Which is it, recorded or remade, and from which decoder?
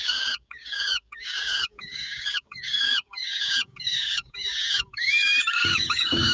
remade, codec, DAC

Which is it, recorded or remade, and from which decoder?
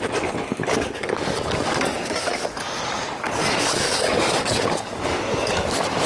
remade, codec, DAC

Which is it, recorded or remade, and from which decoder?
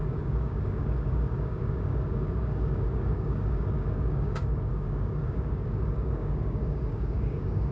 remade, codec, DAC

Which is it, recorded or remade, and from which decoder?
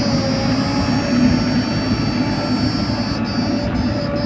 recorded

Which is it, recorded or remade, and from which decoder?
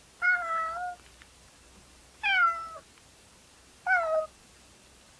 recorded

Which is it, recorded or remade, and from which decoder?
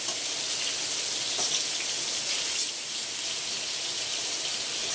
recorded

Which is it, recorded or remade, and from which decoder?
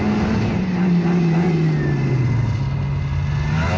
recorded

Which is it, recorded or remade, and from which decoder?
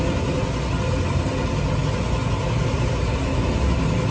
recorded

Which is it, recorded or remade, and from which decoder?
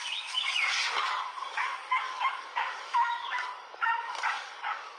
remade, codec, DAC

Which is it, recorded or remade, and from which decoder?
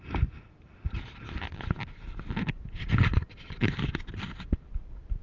recorded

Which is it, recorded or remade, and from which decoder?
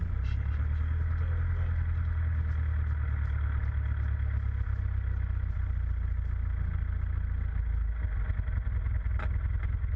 recorded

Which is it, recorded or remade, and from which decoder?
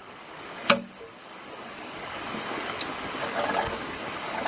remade, codec, DAC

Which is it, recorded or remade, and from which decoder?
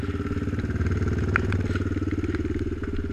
recorded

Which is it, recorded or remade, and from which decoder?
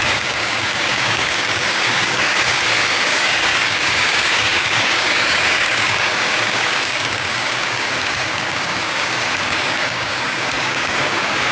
remade, codec, DAC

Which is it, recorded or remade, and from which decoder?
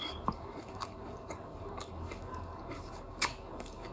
remade, codec, DAC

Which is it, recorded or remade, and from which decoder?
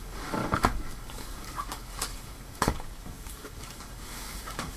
remade, codec, DAC